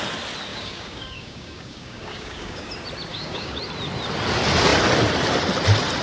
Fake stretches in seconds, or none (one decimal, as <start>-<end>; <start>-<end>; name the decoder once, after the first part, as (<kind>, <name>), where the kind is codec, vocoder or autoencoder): 0.5-2.7 (codec, DAC); 3.1-3.6